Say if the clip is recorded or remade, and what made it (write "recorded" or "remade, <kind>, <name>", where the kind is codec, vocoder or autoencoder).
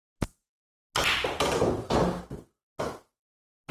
recorded